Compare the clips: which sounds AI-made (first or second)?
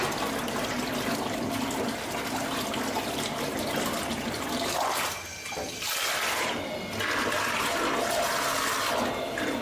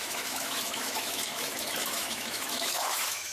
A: second